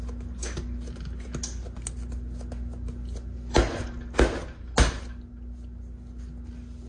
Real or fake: real